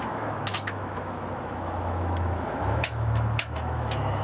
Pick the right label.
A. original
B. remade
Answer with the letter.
B